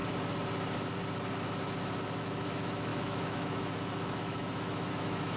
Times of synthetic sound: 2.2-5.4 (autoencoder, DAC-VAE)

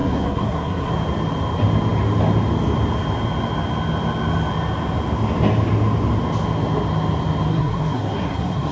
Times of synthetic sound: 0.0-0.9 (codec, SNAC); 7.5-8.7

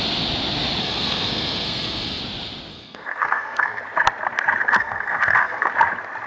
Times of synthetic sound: 0.8-2.2 (codec, SNAC); 2.7-3.8; 4.6-5.7

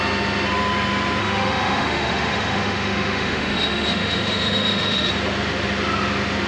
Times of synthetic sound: 1.2-5.1 (autoencoder, DAC-VAE)